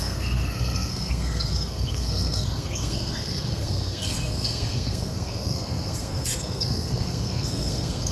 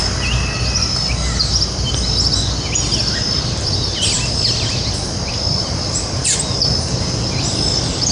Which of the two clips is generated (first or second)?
first